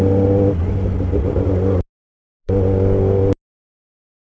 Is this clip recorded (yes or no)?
yes